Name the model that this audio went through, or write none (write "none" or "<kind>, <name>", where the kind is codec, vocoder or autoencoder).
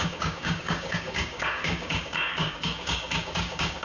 codec, DAC